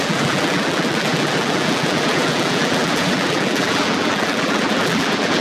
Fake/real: fake